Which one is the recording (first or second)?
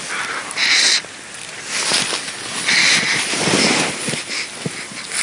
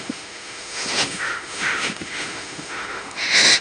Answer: first